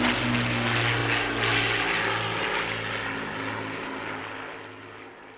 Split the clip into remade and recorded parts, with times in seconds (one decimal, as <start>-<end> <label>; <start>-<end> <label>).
0.0-5.4 recorded